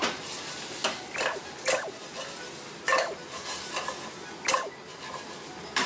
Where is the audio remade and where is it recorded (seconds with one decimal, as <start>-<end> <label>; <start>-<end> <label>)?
0.0-5.9 recorded